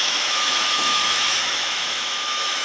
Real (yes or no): no